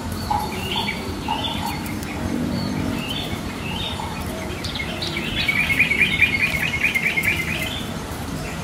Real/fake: fake